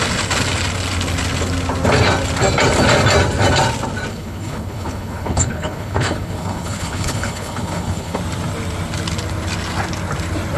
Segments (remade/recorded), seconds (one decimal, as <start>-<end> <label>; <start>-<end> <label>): 0.0-4.1 recorded; 4.1-8.2 remade; 8.2-10.6 recorded